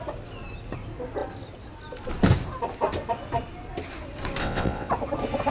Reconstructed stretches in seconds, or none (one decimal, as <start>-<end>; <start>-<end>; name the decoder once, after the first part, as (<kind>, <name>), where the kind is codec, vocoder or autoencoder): 4.4-4.9 (vocoder, WaveNeXt)